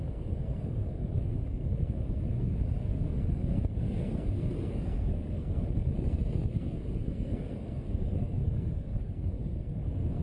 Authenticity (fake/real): fake